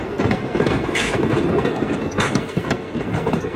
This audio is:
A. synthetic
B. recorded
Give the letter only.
A